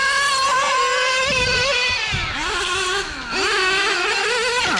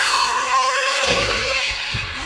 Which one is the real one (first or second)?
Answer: first